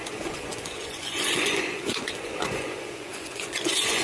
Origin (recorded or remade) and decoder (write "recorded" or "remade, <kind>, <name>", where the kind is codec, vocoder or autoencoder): remade, vocoder, Vocos